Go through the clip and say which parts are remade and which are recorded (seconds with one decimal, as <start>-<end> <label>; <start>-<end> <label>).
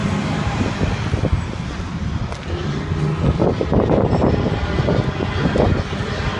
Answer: 0.0-6.4 recorded